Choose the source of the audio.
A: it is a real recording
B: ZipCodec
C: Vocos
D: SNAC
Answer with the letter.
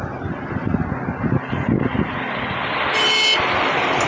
A